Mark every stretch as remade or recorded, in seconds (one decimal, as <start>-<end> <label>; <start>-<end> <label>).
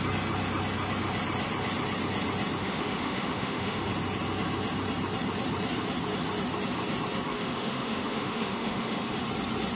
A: 0.0-2.6 recorded; 2.6-3.9 remade; 3.9-7.3 recorded; 7.3-9.2 remade; 9.2-9.8 recorded